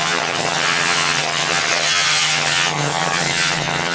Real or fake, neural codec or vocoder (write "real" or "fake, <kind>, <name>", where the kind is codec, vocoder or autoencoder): fake, vocoder, HiFi-GAN